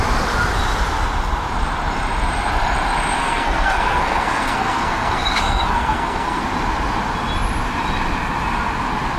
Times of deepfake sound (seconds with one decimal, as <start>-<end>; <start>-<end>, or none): 3.2-6.4